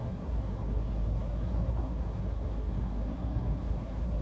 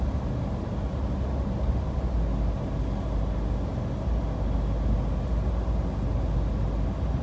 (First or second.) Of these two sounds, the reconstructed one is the first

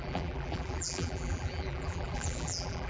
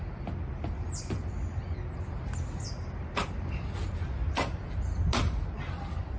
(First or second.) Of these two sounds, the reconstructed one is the first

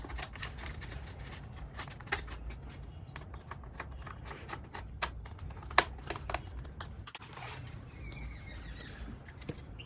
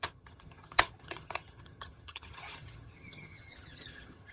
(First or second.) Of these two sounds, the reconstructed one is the second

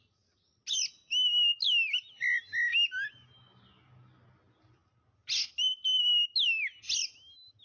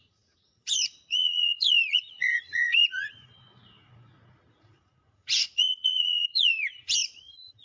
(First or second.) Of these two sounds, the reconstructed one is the second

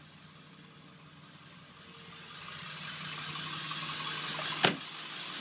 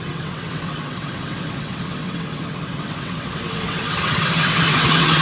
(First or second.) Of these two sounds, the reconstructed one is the second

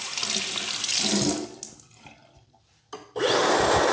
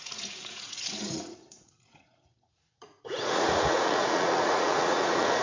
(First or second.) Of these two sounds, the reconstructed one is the second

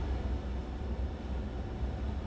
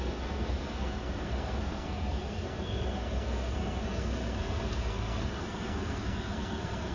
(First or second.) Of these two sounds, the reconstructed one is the second